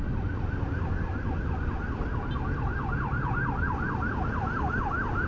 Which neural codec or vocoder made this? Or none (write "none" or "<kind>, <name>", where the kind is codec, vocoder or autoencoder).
none